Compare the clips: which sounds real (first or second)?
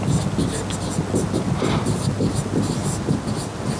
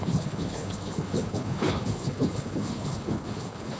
first